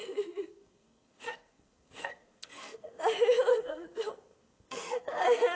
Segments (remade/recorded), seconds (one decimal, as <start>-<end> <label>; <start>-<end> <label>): 0.0-3.0 remade; 3.0-3.5 recorded; 3.5-5.6 remade